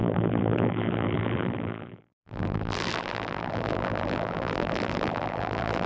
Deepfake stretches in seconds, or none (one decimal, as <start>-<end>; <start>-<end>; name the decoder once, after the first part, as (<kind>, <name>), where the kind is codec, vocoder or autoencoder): 0.0-5.9 (vocoder, BigVGAN v2)

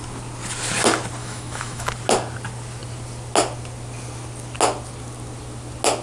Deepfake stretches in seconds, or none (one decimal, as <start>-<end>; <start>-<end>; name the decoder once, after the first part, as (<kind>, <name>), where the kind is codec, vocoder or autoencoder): 1.2-1.9 (autoencoder, DAC-VAE)